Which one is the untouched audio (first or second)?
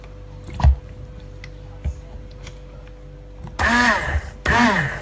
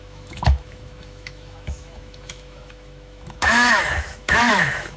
first